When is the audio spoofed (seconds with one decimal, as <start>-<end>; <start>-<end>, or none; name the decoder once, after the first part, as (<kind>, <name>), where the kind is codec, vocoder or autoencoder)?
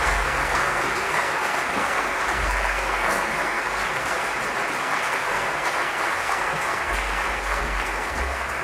0.0-4.3 (codec, SNAC); 4.8-8.6